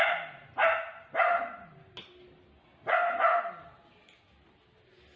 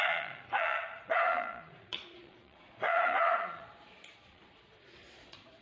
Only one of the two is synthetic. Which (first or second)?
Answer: second